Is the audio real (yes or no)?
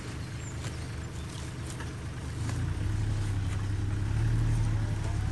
yes